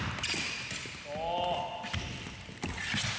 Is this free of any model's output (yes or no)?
yes